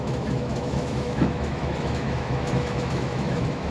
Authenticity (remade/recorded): remade